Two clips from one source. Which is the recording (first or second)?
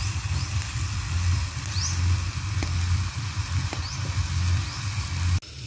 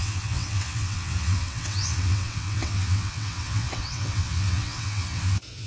first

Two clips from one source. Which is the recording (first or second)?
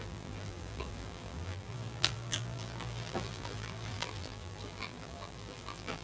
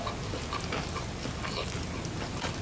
second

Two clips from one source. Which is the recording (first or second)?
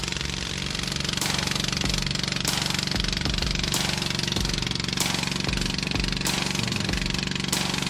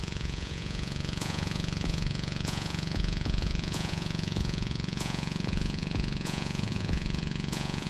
first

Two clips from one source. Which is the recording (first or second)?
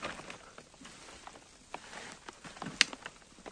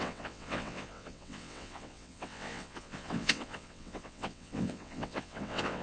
first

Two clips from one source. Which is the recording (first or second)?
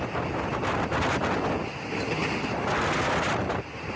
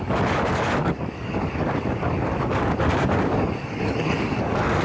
first